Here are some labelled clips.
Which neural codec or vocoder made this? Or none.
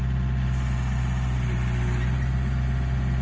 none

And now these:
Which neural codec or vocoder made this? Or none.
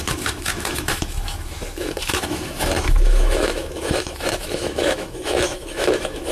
autoencoder, DAC-VAE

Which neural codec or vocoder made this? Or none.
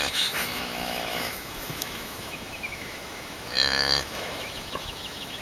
autoencoder, DAC-VAE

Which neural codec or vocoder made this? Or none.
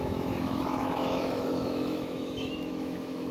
autoencoder, DAC-VAE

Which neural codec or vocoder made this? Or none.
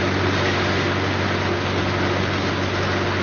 none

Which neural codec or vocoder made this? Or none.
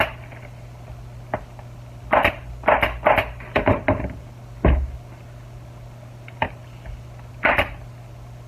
none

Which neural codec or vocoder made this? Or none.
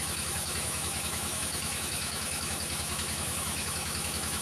autoencoder, DAC-VAE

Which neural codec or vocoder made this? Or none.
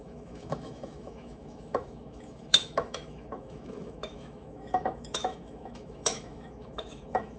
autoencoder, DAC-VAE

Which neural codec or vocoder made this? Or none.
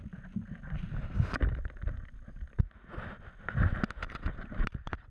none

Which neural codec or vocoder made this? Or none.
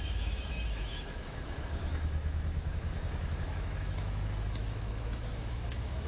autoencoder, DAC-VAE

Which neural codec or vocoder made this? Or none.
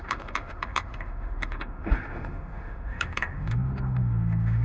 autoencoder, DAC-VAE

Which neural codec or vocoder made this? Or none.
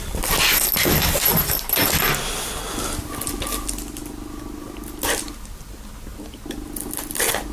none